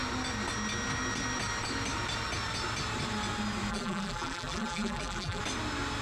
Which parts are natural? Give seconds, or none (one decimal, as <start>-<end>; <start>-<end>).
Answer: 0.0-3.7; 5.4-6.0